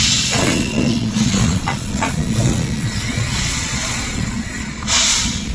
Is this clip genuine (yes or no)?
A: no